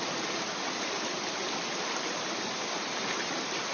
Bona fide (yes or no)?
yes